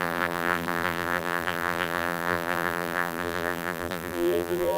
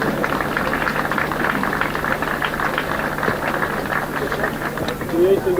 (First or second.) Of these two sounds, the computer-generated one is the first